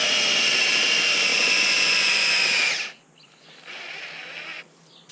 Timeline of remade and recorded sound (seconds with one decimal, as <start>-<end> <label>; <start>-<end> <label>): 0.0-1.3 recorded; 1.3-2.4 remade; 2.4-5.1 recorded